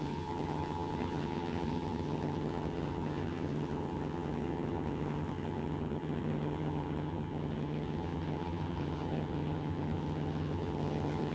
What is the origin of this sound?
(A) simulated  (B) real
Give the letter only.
A